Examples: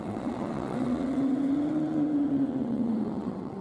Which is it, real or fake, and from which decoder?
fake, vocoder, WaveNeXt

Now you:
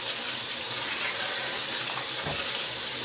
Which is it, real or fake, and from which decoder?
real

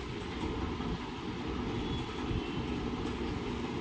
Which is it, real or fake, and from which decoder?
real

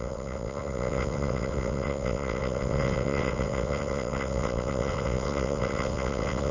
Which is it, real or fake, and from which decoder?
fake, vocoder, WaveNeXt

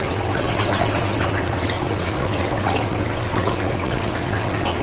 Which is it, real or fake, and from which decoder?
fake, vocoder, WaveNeXt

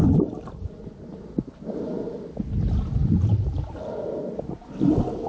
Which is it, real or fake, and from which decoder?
real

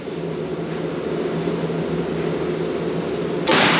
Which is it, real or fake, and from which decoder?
real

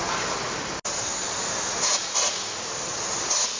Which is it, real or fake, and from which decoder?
real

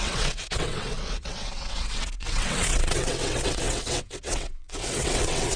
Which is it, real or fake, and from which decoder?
fake, vocoder, WaveNeXt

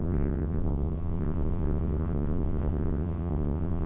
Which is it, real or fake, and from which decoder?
fake, vocoder, WaveNeXt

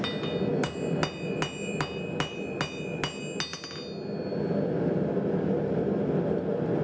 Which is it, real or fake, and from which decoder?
real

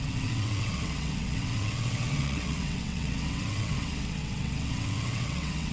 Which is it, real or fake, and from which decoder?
fake, vocoder, WaveNeXt